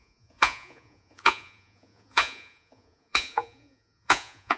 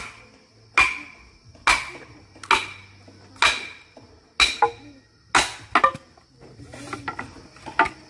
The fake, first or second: first